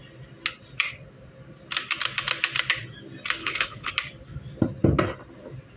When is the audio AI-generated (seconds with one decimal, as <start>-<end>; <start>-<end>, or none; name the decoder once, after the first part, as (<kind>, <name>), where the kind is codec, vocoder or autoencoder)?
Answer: 3.4-3.9 (codec, HILCodec)